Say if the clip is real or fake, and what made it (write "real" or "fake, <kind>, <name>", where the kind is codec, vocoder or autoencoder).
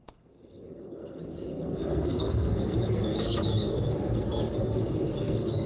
fake, codec, SNAC